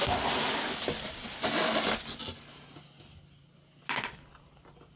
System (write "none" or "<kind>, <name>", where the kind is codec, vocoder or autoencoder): none